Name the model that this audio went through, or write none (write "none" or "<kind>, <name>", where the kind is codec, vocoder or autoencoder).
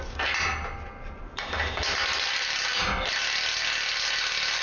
none